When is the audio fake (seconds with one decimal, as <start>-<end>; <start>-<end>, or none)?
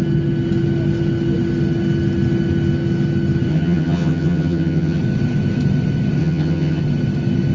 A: 3.5-5.0; 6.2-6.8